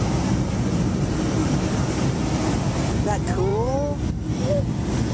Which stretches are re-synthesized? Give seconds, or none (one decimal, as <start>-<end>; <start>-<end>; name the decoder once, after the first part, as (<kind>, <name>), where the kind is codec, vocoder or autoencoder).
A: 1.4-2.0 (codec, DAC)